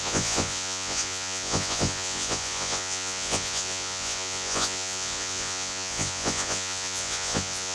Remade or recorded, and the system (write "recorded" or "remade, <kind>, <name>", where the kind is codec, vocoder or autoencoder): remade, vocoder, Vocos